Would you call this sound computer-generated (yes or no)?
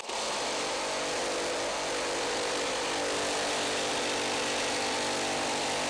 no